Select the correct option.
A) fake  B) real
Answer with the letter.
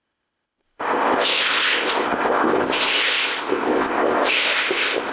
A